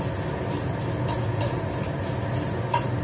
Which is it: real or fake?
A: real